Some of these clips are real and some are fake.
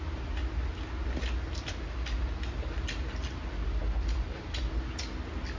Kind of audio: real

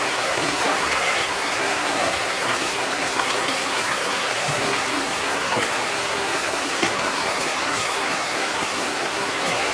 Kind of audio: fake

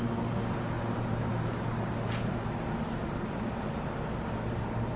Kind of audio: real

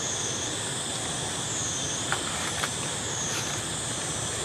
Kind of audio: real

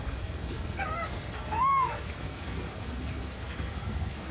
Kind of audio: fake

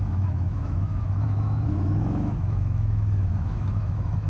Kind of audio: fake